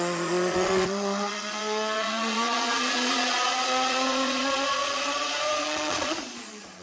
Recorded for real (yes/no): no